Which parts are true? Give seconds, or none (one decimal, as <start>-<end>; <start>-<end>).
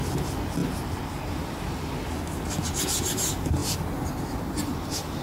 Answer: 0.0-5.2